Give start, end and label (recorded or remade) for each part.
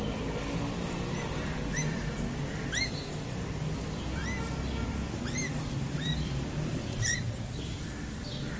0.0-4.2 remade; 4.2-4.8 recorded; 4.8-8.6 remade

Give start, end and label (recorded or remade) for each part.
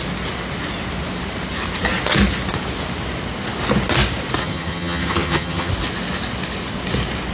0.0-4.4 recorded; 4.4-5.7 remade; 5.7-7.3 recorded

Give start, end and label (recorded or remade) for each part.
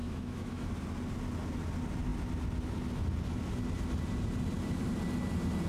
0.0-0.7 remade; 0.7-5.7 recorded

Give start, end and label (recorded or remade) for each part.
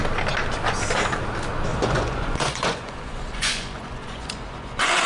0.0-1.7 recorded; 1.7-5.1 remade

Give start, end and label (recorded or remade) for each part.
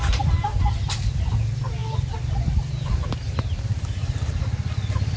0.0-5.2 recorded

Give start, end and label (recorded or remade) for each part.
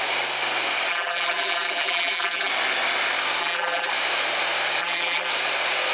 0.0-0.9 recorded; 0.9-2.5 remade; 2.5-3.4 recorded; 3.4-3.9 remade; 3.9-4.8 recorded; 4.8-5.3 remade; 5.3-5.9 recorded